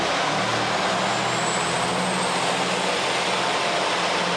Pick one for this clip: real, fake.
real